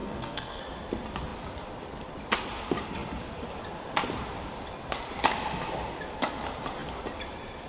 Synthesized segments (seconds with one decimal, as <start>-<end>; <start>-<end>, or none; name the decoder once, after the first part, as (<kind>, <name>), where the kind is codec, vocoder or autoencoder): 0.0-0.6 (codec, SNAC)